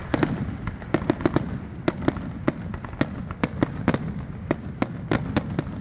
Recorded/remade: recorded